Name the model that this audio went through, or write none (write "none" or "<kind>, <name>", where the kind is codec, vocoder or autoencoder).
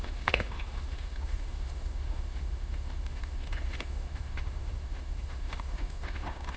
autoencoder, DAC-VAE